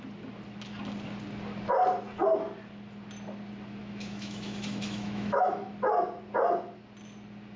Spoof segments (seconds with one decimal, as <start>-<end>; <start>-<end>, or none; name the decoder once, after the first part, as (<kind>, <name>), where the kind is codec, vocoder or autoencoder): 3.8-5.7 (autoencoder, DAC-VAE)